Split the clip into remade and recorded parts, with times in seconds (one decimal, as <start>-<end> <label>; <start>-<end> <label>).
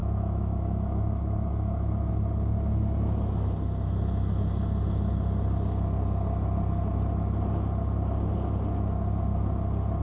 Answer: 0.0-2.1 remade; 2.1-10.0 recorded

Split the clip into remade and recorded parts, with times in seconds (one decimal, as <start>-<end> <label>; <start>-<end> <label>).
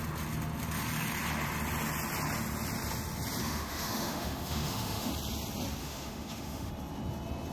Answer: 0.0-3.4 recorded; 3.4-5.1 remade; 5.1-5.8 recorded; 5.8-6.7 remade; 6.7-7.5 recorded